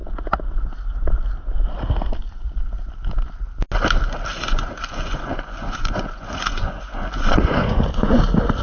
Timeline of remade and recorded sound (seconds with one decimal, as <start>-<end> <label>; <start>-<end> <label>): 0.0-4.3 recorded; 4.3-8.2 remade; 8.2-8.6 recorded

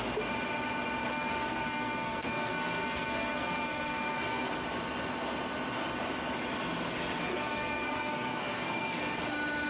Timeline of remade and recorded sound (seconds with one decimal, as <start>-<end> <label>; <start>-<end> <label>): 0.0-1.0 recorded; 1.0-4.5 remade; 4.5-7.3 recorded; 7.3-9.0 remade; 9.0-9.7 recorded

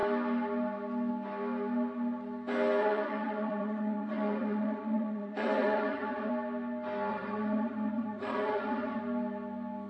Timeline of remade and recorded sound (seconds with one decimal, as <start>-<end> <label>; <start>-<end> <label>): 0.0-2.8 recorded; 2.8-6.3 remade; 6.3-7.1 recorded; 7.1-9.0 remade; 9.0-9.9 recorded

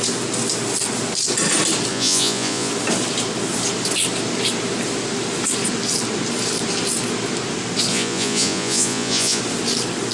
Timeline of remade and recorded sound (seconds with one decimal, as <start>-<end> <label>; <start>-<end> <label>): 0.0-1.9 recorded; 1.9-2.7 remade; 2.7-7.9 recorded; 7.9-9.4 remade; 9.4-10.1 recorded

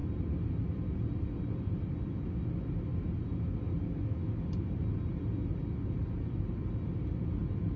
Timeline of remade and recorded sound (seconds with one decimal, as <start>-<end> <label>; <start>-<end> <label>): 0.0-7.8 recorded

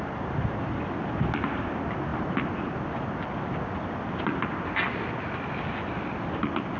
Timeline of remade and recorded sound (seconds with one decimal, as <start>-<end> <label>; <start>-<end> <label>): 0.0-6.8 recorded

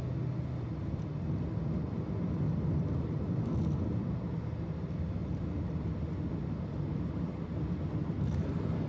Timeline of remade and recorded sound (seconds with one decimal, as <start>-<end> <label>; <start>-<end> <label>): 0.0-8.9 recorded